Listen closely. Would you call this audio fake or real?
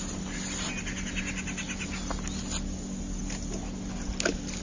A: real